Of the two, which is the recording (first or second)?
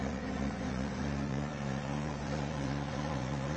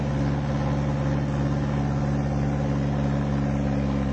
second